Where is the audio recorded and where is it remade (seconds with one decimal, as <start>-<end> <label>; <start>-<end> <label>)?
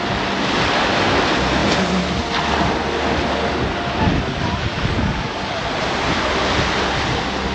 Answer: 0.0-4.1 recorded; 4.1-5.6 remade; 5.6-7.5 recorded